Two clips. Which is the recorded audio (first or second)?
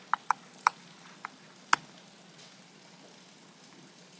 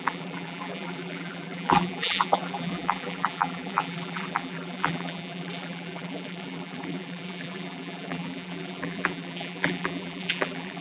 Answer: first